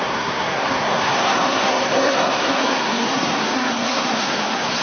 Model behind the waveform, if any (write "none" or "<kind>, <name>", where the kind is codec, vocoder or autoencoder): codec, SNAC